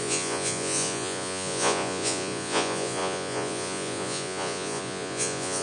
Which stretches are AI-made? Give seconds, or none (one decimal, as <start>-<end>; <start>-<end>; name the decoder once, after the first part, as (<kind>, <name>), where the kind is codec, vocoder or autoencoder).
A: 0.0-5.6 (vocoder, Vocos)